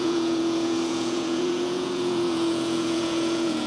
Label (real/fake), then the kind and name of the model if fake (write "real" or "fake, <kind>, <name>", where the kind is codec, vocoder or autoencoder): fake, vocoder, Vocos